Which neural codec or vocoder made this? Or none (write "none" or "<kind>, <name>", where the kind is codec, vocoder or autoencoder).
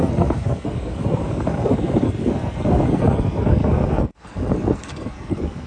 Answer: codec, SNAC